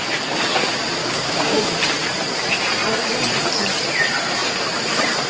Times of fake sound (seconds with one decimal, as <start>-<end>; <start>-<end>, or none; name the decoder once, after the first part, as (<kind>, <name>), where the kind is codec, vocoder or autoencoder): 1.0-1.6 (codec, DAC)